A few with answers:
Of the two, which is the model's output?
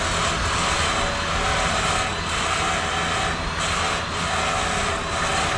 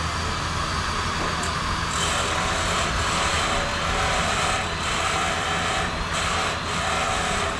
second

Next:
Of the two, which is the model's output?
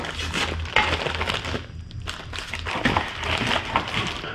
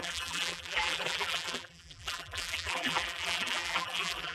second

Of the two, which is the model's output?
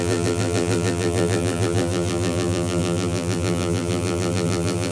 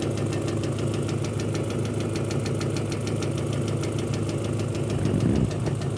first